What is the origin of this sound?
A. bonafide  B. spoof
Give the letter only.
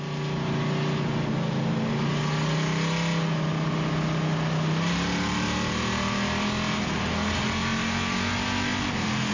A